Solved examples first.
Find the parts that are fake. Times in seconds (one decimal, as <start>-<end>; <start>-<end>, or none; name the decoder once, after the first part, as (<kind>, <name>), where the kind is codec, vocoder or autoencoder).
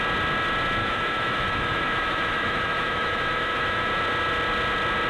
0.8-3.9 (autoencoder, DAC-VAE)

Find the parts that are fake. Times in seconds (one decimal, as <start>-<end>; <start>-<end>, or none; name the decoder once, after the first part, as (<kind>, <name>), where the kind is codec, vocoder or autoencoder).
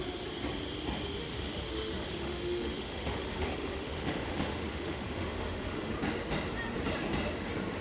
1.2-5.9 (autoencoder, DAC-VAE)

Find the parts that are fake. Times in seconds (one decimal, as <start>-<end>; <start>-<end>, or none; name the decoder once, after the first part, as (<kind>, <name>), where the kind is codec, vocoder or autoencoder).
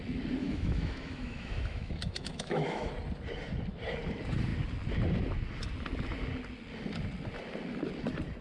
0.4-2.9 (autoencoder, DAC-VAE)